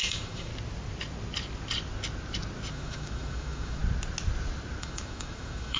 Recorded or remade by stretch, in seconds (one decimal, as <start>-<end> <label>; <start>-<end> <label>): 0.0-0.5 remade; 0.5-2.7 recorded; 2.7-3.8 remade; 3.8-4.8 recorded; 4.8-5.8 remade